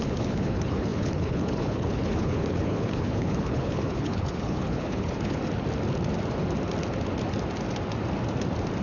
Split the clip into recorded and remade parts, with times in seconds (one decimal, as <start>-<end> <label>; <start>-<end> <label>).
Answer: 0.0-5.4 remade; 5.4-8.8 recorded